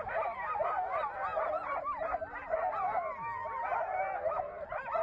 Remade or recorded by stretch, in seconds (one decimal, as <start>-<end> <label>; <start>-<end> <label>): 0.0-5.0 recorded